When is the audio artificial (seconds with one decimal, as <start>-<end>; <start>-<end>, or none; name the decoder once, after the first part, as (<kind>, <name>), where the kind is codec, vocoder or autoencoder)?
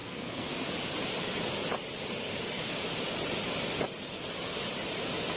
0.0-0.7 (codec, SNAC); 2.2-2.8